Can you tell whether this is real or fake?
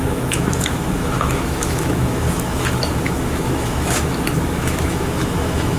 fake